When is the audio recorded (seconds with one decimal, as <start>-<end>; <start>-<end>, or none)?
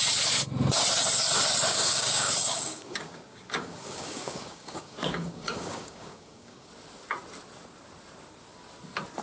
0.0-1.7; 6.7-9.2